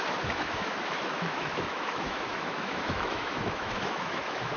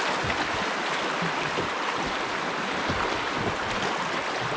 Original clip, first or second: second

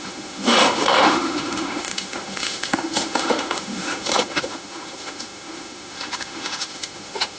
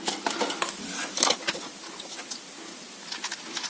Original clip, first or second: second